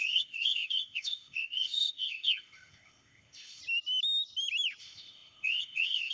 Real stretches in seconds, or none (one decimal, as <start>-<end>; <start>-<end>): 3.6-4.8